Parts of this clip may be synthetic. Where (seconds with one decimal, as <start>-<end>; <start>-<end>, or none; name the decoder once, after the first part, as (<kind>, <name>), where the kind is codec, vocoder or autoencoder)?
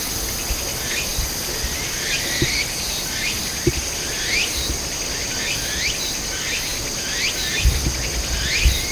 none